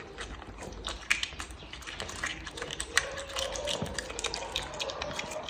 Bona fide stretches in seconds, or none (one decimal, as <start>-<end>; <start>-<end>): 0.0-2.3; 3.2-5.5